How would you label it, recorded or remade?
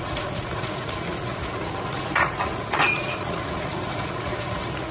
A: remade